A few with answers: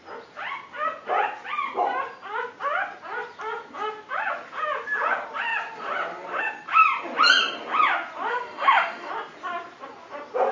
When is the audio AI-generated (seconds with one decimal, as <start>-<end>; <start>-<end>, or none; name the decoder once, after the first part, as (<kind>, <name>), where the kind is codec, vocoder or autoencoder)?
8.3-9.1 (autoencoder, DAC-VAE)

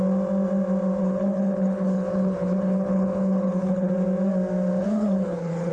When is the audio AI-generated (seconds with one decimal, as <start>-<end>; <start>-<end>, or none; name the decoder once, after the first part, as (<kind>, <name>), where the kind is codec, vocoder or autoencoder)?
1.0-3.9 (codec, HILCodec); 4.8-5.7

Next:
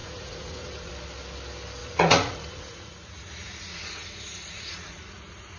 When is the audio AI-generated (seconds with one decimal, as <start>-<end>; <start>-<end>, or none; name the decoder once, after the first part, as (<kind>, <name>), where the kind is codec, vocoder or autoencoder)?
0.0-0.9 (vocoder, Vocos); 1.8-5.6

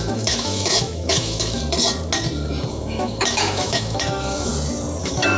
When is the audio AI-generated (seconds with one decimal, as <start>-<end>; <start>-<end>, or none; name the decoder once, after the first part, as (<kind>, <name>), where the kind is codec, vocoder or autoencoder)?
0.0-1.6 (autoencoder, DAC-VAE); 2.7-4.5; 5.0-5.4

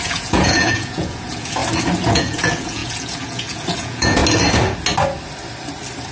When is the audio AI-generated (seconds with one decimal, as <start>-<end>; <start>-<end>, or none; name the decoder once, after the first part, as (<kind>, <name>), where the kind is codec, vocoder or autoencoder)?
0.0-1.6 (vocoder, Vocos); 2.1-4.2

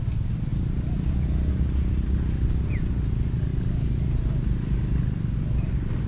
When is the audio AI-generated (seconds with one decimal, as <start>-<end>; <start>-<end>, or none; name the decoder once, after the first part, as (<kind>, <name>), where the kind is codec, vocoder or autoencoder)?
none

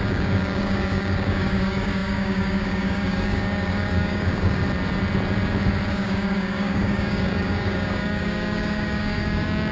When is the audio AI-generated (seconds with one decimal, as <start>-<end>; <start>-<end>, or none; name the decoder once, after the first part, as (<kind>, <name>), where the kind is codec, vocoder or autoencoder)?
0.0-4.6 (codec, DAC); 5.9-9.7

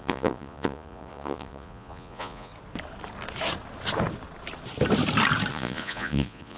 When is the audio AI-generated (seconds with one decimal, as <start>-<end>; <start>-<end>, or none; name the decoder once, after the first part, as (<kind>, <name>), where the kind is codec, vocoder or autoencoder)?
0.0-2.5 (vocoder, Vocos); 5.5-6.6